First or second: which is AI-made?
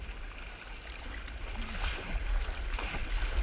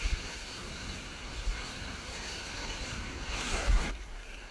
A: second